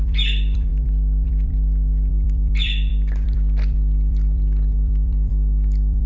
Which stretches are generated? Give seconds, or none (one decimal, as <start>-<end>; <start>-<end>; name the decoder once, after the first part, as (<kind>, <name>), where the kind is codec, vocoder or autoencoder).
0.0-6.1 (vocoder, BigVGAN v2)